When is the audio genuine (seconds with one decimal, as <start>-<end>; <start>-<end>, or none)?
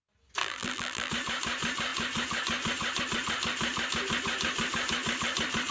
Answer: 0.0-0.4; 1.1-5.7